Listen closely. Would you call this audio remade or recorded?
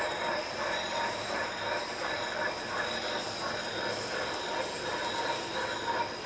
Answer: recorded